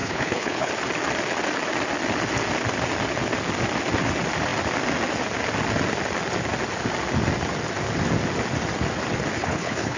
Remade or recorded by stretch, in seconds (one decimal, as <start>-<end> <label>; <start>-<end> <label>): 0.0-0.7 remade; 0.7-9.4 recorded; 9.4-10.0 remade